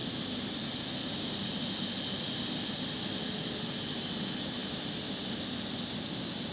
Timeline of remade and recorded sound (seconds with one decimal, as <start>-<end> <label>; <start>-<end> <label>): 0.0-6.5 recorded